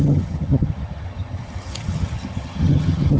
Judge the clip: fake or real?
fake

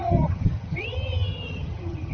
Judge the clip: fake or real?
fake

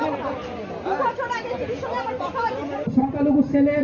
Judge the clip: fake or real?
real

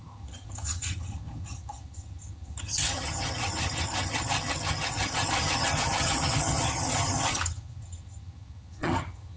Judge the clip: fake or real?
fake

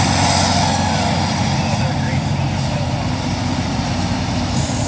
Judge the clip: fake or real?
real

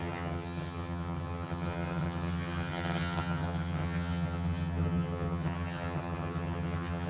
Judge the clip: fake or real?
fake